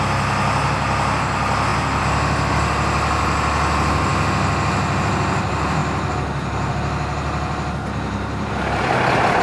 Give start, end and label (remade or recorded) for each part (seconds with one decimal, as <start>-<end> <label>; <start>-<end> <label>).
0.0-7.8 recorded; 7.8-8.5 remade; 8.5-9.4 recorded